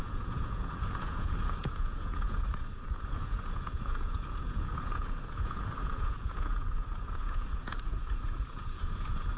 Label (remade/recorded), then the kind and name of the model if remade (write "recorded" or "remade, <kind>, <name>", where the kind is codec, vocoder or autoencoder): remade, vocoder, Vocos